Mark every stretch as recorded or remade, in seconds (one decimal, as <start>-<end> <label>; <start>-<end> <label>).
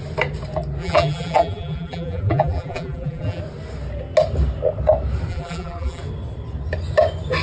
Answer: 0.0-0.8 recorded; 0.8-3.4 remade; 3.4-5.3 recorded; 5.3-6.0 remade; 6.0-7.4 recorded